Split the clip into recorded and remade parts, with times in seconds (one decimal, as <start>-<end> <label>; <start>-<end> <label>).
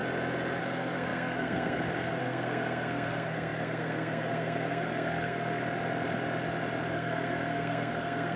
0.0-0.6 recorded; 0.6-5.6 remade; 5.6-6.9 recorded; 6.9-8.4 remade